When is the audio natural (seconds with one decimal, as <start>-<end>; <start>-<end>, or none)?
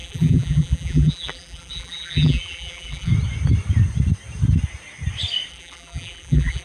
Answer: 3.1-5.5